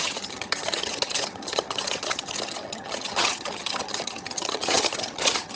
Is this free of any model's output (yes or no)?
no